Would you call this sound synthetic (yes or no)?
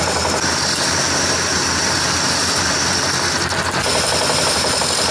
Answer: no